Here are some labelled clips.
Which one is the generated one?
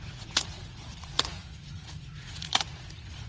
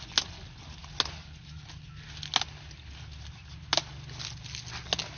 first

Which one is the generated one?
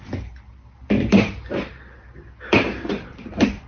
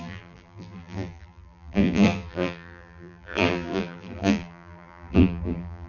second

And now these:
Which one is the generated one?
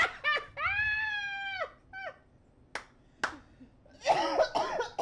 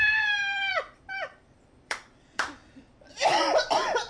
second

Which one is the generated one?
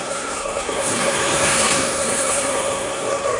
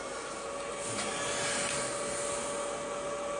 first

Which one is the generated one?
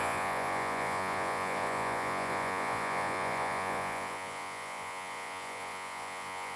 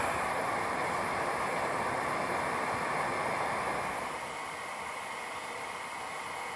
first